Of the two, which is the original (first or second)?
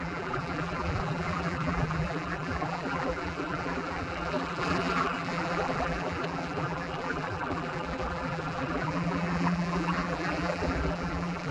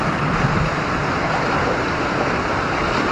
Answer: second